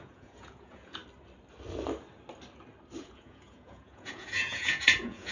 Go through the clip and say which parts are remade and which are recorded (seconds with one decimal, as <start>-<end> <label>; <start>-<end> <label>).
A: 0.0-1.0 remade; 1.0-3.0 recorded; 3.0-5.3 remade